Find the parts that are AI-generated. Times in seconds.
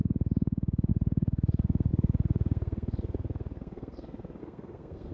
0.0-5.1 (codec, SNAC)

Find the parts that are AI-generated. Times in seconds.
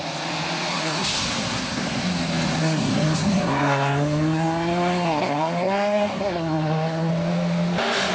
0.7-2.1 (codec, SNAC); 2.6-7.1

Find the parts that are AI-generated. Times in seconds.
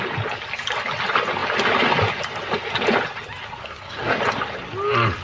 3.6-4.2 (codec, SNAC)